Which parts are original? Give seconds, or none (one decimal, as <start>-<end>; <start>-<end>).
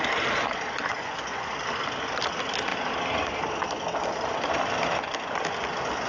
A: 0.0-0.9; 1.5-6.1